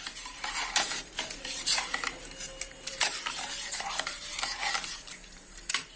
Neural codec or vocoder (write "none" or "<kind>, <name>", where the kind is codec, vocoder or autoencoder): vocoder, BigVGAN v2